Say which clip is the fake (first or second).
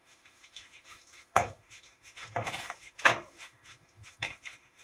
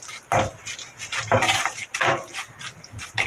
first